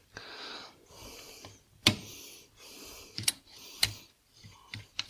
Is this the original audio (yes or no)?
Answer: no